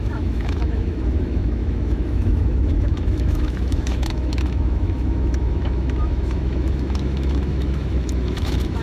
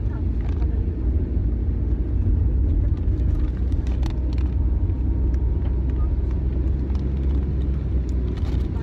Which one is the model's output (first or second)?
first